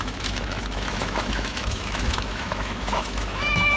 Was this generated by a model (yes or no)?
yes